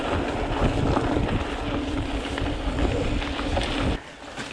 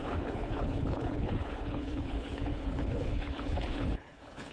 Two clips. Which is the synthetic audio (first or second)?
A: second